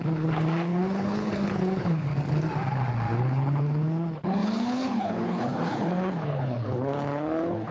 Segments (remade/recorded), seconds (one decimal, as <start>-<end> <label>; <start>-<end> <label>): 0.0-2.1 remade; 2.1-3.2 recorded; 3.2-7.7 remade

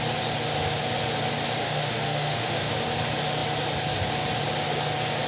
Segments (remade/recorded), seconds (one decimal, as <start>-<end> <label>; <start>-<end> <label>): 0.0-1.6 recorded; 1.6-2.7 remade; 2.7-5.3 recorded